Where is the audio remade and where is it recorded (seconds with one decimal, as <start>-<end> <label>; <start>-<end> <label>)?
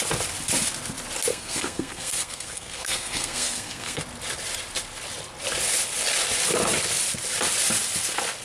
0.0-1.3 recorded; 1.3-4.0 remade; 4.0-8.4 recorded